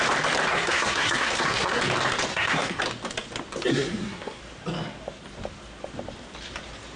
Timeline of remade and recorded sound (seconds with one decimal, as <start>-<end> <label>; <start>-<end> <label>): 0.0-0.5 recorded; 0.5-1.8 remade; 1.8-2.3 recorded; 2.3-2.8 remade; 2.8-3.7 recorded; 3.7-4.4 remade; 4.4-7.0 recorded